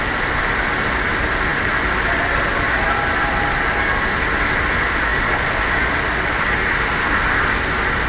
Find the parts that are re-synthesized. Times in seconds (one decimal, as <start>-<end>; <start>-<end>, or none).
none